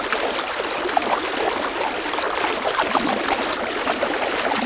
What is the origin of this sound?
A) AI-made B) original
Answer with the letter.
B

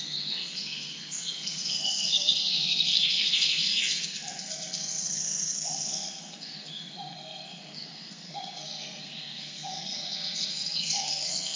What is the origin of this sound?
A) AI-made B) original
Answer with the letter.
A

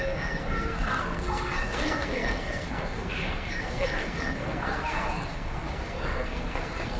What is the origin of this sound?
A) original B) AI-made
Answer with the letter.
B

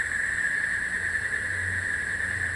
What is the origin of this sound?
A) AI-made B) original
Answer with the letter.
A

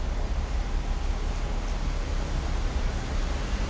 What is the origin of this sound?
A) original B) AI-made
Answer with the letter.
A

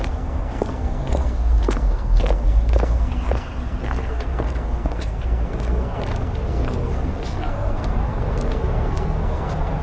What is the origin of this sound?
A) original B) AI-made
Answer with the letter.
B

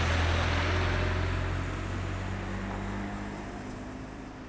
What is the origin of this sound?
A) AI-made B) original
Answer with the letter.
B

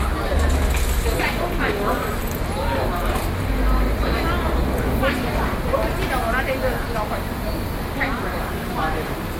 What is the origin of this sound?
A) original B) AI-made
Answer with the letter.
A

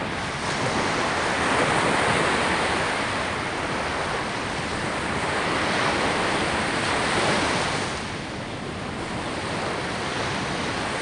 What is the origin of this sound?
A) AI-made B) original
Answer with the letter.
B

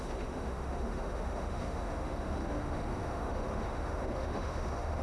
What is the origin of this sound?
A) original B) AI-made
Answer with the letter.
B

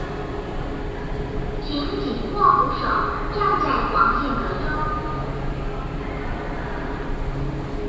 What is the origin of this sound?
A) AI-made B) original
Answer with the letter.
B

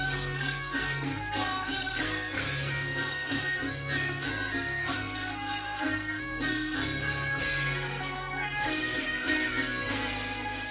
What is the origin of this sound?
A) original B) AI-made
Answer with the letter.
B